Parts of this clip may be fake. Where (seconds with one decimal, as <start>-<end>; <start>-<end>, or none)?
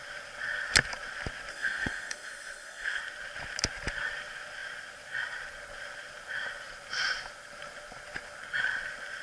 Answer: 1.5-3.0